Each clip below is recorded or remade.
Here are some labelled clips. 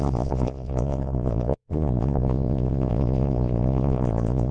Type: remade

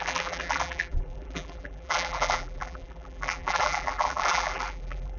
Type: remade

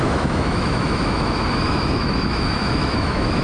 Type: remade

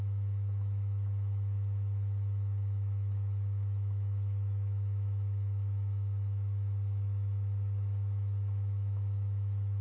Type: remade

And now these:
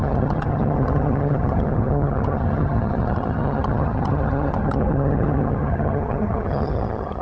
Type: remade